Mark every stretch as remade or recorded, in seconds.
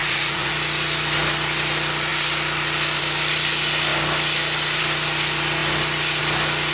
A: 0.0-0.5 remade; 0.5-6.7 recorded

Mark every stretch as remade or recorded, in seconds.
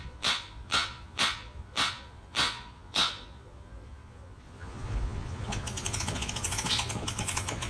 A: 0.0-7.7 remade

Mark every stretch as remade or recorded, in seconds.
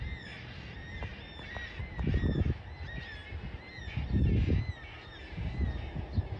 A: 0.0-6.4 recorded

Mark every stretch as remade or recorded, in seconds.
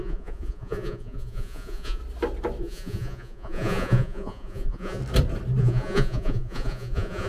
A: 0.0-2.0 remade; 2.0-2.6 recorded; 2.6-5.0 remade; 5.0-5.6 recorded; 5.6-7.3 remade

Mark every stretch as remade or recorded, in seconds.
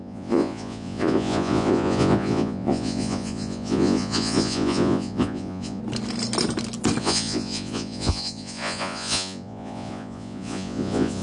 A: 0.0-5.8 remade; 5.8-7.0 recorded; 7.0-11.2 remade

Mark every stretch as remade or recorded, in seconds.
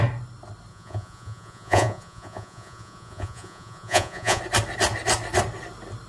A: 0.0-0.7 recorded; 0.7-4.4 remade; 4.4-6.1 recorded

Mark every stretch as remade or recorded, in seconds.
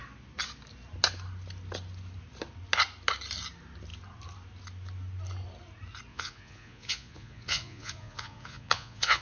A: 0.0-6.1 recorded; 6.1-9.2 remade